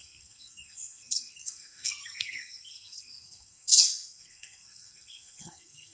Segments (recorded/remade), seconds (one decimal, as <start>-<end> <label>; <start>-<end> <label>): 0.0-5.9 remade